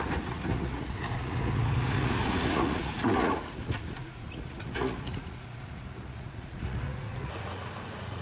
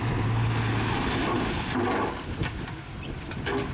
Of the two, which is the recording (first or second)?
second